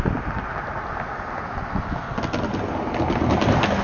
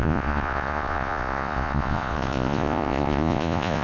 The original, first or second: first